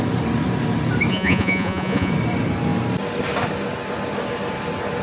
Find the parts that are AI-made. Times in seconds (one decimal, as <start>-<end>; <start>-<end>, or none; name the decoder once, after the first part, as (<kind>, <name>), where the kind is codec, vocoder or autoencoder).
1.1-2.1 (vocoder, Vocos)